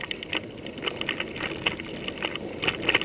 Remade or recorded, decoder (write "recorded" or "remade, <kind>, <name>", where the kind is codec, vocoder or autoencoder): recorded